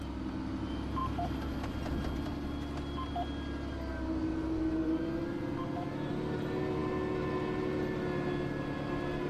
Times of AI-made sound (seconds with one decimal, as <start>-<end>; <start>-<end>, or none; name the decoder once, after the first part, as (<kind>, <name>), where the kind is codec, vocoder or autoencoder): none